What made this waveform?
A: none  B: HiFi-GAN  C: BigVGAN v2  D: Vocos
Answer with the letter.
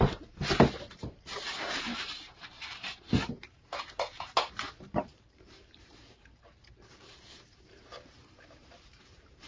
C